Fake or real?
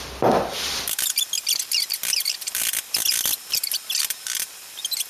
fake